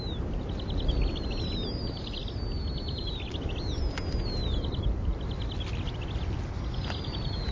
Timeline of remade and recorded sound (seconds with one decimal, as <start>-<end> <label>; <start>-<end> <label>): 0.0-7.5 recorded